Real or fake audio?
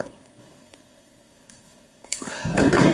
fake